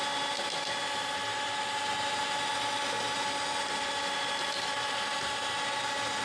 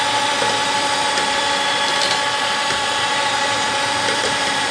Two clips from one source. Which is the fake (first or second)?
second